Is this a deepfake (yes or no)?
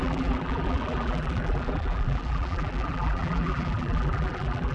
yes